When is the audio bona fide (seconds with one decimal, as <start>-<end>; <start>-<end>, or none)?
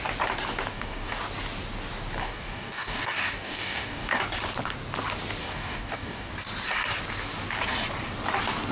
0.0-0.7; 1.2-2.2; 4.2-5.4; 6.3-8.7